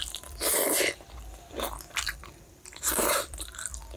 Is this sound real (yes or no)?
no